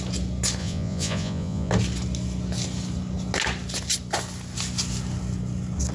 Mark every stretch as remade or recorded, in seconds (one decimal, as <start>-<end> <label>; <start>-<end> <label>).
0.0-0.6 recorded; 0.6-1.7 remade; 1.7-5.9 recorded